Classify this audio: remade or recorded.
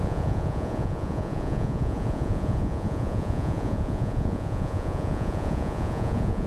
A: remade